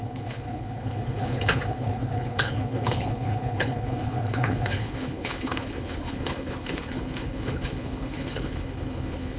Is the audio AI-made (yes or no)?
yes